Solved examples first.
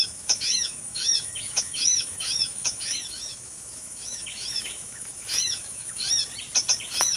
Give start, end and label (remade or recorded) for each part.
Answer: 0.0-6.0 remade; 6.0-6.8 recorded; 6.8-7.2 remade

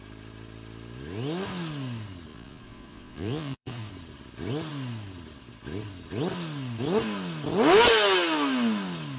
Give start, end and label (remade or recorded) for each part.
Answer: 0.0-2.3 recorded; 2.3-3.9 remade; 3.9-9.2 recorded

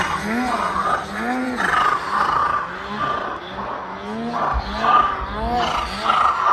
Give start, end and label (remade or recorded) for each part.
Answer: 0.0-6.5 recorded

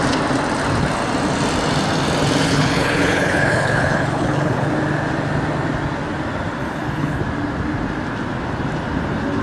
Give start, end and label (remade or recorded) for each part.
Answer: 0.0-2.4 recorded; 2.4-4.7 remade; 4.7-6.6 recorded; 6.6-7.2 remade; 7.2-9.4 recorded

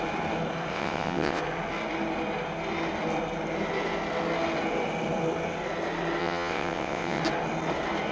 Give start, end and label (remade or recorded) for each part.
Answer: 0.0-0.7 recorded; 0.7-1.4 remade; 1.4-6.2 recorded; 6.2-7.2 remade; 7.2-8.1 recorded

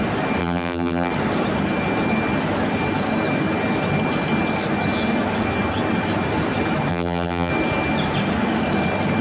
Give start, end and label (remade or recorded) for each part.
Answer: 0.0-0.4 recorded; 0.4-1.1 remade; 1.1-6.9 recorded; 6.9-7.5 remade; 7.5-9.2 recorded

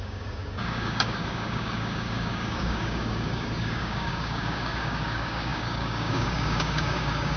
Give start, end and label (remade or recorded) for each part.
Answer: 0.0-7.4 remade

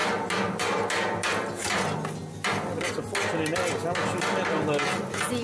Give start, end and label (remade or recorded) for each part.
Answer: 0.0-5.4 recorded